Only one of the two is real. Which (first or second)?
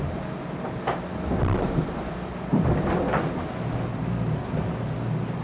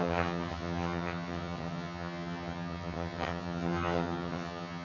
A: first